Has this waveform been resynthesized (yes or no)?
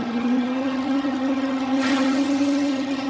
yes